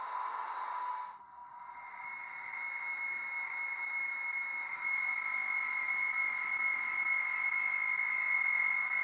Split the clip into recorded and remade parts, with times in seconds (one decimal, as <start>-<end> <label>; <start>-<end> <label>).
0.0-9.0 recorded